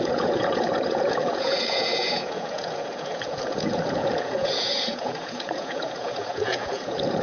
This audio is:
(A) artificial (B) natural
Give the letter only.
A